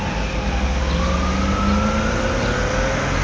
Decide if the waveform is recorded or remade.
recorded